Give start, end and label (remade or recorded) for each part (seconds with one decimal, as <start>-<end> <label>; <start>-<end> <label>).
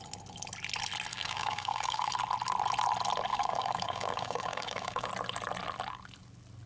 0.0-1.1 recorded; 1.1-2.1 remade; 2.1-3.3 recorded; 3.3-5.1 remade; 5.1-6.7 recorded